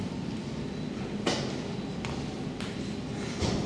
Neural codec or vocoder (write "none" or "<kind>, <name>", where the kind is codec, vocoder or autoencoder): none